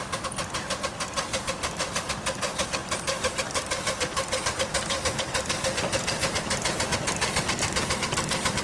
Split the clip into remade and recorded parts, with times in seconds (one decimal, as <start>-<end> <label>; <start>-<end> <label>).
0.0-8.6 recorded